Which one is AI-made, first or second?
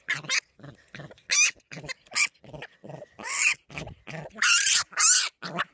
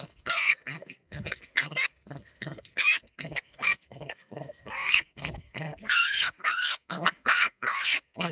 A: second